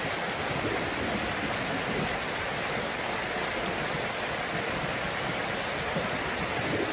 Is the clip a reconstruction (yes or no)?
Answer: no